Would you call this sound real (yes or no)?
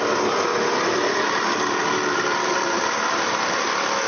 yes